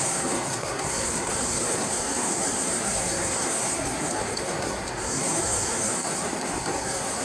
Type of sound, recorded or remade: remade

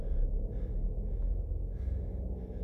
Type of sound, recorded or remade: recorded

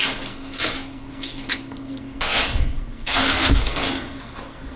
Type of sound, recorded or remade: remade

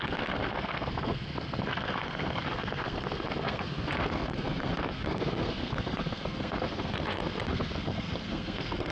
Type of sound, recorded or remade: remade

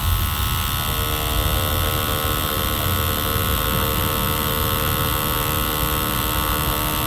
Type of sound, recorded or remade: recorded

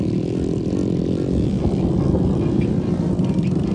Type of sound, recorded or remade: recorded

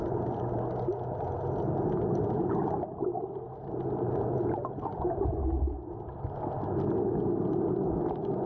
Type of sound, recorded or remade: recorded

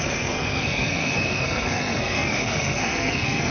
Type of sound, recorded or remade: remade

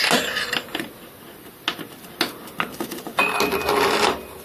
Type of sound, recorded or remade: recorded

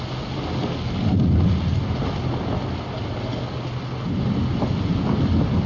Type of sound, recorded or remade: recorded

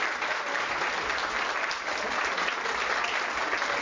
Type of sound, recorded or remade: recorded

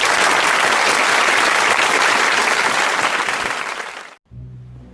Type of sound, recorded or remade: recorded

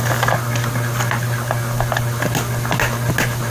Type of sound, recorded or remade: recorded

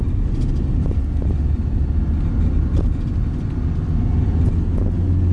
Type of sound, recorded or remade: recorded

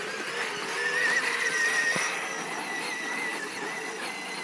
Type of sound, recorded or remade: recorded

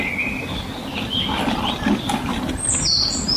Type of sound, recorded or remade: recorded